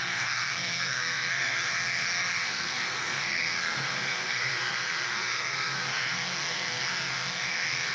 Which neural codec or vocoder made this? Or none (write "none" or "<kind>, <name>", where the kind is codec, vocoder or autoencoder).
codec, SNAC